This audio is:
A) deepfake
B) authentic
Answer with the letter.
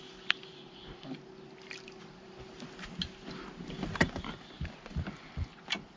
B